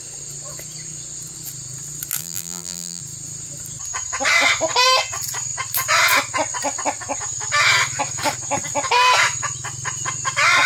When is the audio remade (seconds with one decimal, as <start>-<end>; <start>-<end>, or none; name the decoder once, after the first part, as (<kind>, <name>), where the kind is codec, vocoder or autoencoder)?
2.2-3.0 (vocoder, BigVGAN v2)